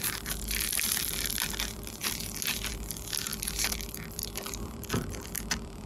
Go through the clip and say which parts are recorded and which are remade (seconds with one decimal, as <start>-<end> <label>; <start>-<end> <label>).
0.0-2.0 remade; 2.0-2.7 recorded; 2.7-5.9 remade

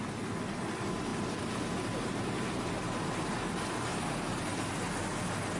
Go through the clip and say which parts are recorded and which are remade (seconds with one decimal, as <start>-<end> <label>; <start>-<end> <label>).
0.0-1.1 recorded; 1.1-3.1 remade; 3.1-5.6 recorded